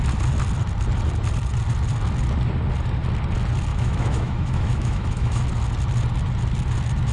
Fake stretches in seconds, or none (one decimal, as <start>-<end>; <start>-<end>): 3.7-5.4